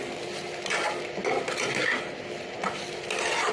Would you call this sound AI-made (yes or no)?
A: no